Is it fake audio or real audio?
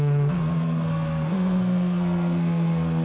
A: fake